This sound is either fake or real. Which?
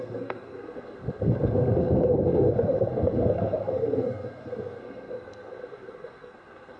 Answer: fake